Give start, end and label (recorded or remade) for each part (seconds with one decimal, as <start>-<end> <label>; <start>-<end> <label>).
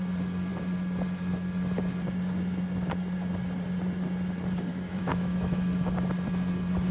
0.0-4.7 recorded; 4.7-5.6 remade; 5.6-6.9 recorded